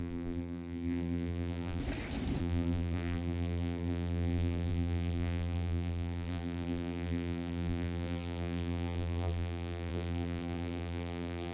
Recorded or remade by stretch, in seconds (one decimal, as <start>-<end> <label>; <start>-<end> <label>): 0.0-1.8 remade; 1.8-2.4 recorded; 2.4-11.5 remade